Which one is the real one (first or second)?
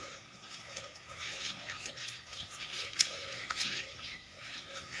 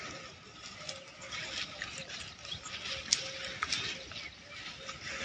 second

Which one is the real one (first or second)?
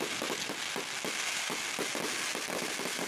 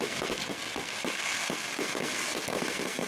first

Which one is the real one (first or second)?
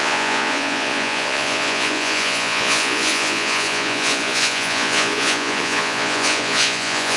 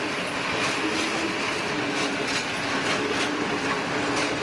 second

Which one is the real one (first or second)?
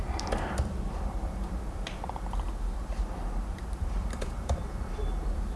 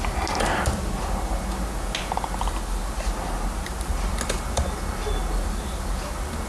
second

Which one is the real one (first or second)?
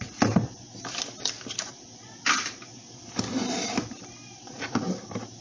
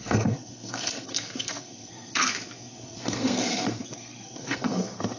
first